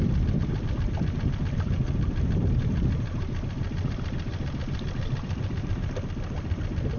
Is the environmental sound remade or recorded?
recorded